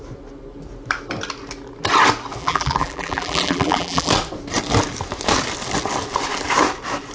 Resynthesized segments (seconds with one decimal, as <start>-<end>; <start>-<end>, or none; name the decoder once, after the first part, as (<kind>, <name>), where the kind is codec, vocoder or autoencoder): 2.4-4.1 (vocoder, BigVGAN v2)